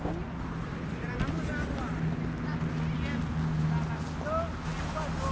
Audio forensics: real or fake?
real